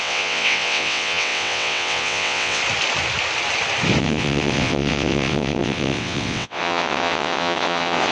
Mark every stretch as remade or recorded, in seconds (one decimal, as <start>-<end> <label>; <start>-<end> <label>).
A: 0.0-2.6 remade; 2.6-4.0 recorded; 4.0-8.1 remade